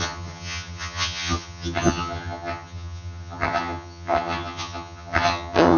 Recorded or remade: remade